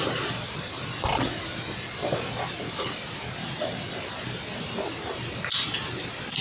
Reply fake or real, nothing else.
fake